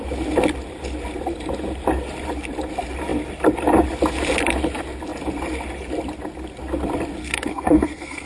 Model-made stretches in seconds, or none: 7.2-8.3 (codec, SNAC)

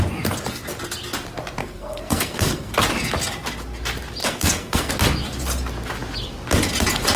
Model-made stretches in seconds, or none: 1.6-2.7 (codec, SNAC); 4.2-4.9

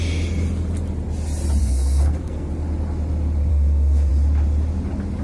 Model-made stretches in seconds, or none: 1.6-2.5 (codec, SNAC); 3.5-4.1

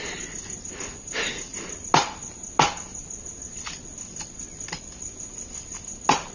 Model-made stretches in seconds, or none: none

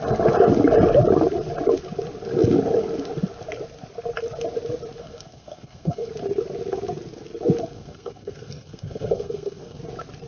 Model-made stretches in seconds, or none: 5.0-6.1 (codec, SNAC); 7.6-9.8

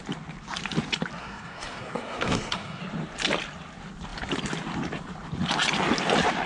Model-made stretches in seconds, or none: 1.2-2.8 (codec, SNAC)